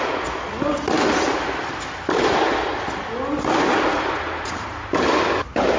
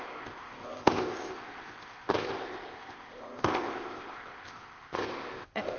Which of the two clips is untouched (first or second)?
first